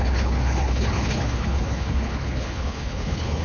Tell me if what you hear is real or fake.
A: fake